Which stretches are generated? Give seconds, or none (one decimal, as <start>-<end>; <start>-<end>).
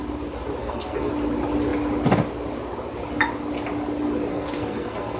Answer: 0.6-1.1; 4.3-5.2